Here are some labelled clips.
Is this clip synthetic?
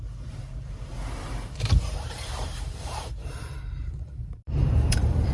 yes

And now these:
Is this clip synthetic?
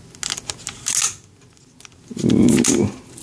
no